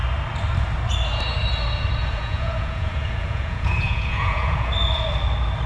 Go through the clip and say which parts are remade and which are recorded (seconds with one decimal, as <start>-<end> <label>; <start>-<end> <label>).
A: 0.0-2.0 recorded; 2.0-4.7 remade; 4.7-5.7 recorded